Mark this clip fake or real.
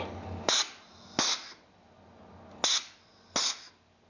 real